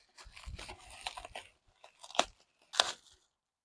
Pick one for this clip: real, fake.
real